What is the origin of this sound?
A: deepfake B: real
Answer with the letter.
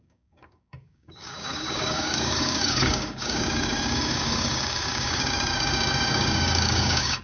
A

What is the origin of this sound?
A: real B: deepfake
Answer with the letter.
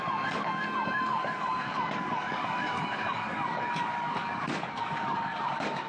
B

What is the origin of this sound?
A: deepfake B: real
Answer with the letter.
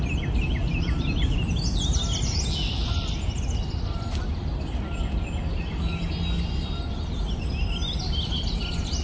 B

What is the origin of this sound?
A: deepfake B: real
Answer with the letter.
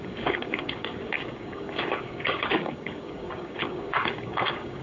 A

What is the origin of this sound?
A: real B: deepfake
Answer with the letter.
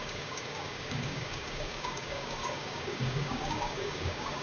B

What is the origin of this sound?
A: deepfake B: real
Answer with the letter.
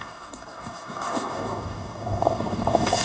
A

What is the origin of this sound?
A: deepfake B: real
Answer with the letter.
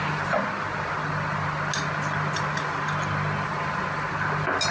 B